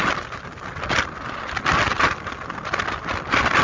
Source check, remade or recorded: recorded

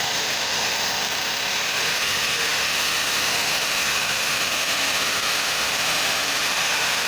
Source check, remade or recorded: remade